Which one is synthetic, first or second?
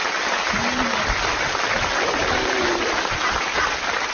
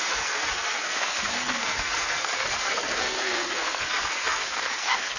second